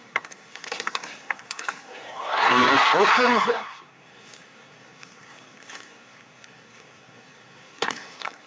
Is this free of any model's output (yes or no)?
no